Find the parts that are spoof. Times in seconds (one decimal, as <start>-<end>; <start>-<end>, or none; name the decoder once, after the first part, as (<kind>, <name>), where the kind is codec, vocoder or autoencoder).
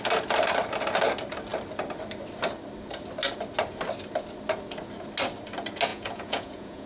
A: 5.9-6.9 (vocoder, Vocos)